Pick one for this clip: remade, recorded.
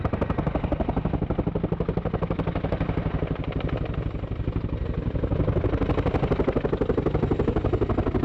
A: recorded